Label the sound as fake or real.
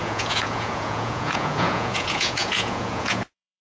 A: fake